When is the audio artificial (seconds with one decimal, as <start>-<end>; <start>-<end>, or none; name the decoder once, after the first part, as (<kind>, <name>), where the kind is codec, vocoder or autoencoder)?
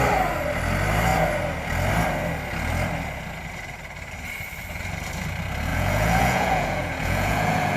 5.7-7.8 (vocoder, Vocos)